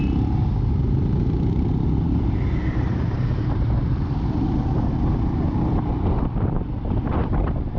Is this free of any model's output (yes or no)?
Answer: no